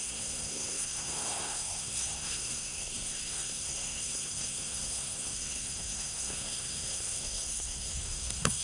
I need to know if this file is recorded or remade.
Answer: remade